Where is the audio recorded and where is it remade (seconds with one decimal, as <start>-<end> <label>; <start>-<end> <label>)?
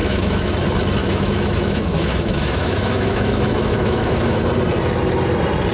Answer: 0.0-0.5 remade; 0.5-1.0 recorded; 1.0-4.4 remade; 4.4-5.7 recorded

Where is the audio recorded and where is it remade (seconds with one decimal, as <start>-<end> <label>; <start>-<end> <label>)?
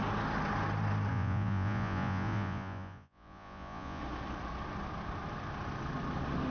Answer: 0.0-1.1 recorded; 1.1-4.0 remade; 4.0-6.5 recorded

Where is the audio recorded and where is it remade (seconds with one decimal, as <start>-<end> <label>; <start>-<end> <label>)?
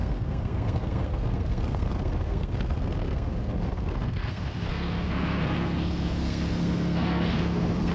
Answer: 0.0-7.9 remade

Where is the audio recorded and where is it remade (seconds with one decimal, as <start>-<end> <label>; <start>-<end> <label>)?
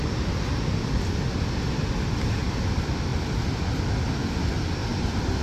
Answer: 0.0-5.4 recorded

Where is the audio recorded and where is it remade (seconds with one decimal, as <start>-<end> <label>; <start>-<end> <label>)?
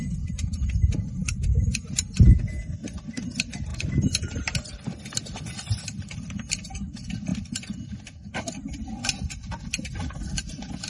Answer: 0.0-10.9 recorded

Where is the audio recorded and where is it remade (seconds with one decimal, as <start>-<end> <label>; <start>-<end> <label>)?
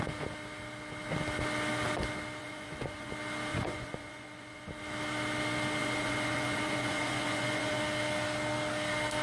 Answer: 0.0-2.4 recorded; 2.4-3.1 remade; 3.1-3.5 recorded; 3.5-4.6 remade; 4.6-5.8 recorded; 5.8-7.8 remade; 7.8-9.2 recorded